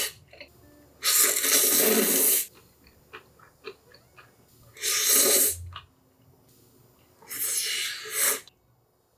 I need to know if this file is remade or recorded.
recorded